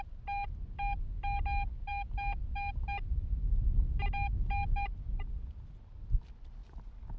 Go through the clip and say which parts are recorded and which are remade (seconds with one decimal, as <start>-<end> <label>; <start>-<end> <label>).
0.0-7.2 recorded